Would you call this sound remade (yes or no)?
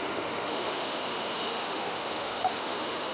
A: yes